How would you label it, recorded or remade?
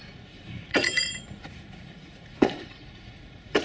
remade